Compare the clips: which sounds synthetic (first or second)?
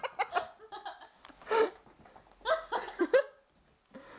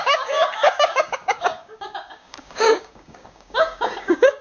second